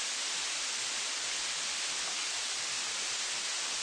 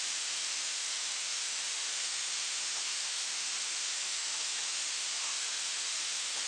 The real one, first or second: first